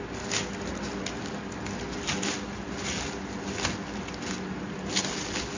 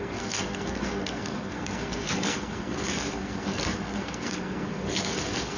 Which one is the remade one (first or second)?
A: second